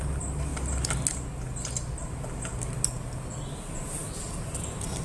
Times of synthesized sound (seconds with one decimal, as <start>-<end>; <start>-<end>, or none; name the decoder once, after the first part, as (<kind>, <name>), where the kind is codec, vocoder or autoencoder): none